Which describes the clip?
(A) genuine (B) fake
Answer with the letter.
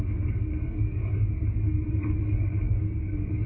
B